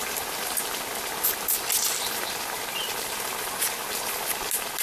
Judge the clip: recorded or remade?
recorded